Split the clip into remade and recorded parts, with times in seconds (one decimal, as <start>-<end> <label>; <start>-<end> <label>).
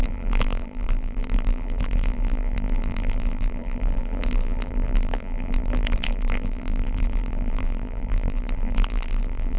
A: 0.0-9.6 remade